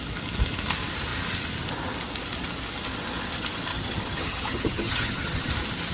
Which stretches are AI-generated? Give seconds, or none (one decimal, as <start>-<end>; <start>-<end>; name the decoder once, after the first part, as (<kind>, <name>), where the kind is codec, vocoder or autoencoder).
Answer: 3.7-5.5 (vocoder, HiFi-GAN)